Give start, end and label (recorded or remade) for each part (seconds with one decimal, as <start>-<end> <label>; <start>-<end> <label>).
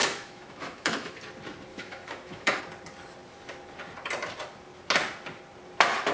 0.0-1.1 remade; 1.1-1.7 recorded; 1.7-2.6 remade; 2.6-6.1 recorded